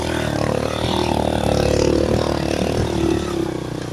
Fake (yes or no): no